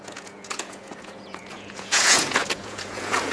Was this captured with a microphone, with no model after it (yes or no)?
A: no